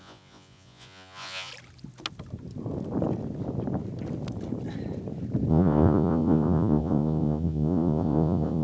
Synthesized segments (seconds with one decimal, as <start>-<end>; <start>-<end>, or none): 0.0-1.5; 5.5-8.6